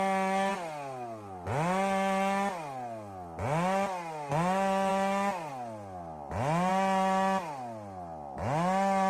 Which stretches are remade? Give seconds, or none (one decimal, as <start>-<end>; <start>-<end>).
none

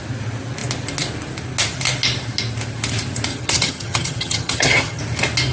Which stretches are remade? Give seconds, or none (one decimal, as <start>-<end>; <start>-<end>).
3.3-5.0

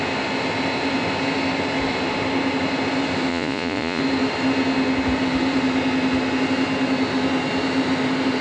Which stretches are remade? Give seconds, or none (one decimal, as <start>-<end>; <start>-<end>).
3.3-4.0

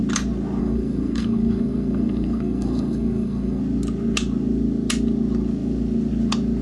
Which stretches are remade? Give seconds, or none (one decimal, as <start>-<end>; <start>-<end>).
0.6-3.6